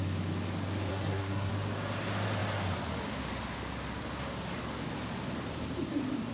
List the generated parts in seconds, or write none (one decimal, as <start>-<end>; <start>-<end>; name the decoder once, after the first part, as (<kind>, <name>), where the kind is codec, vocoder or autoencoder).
0.9-1.5 (codec, SNAC)